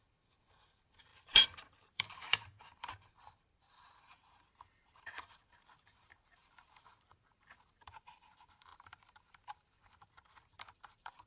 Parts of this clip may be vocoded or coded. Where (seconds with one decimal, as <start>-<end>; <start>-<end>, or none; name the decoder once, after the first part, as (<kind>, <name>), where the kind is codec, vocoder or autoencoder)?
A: 0.0-11.3 (vocoder, BigVGAN v2)